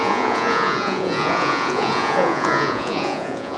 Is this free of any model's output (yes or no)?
no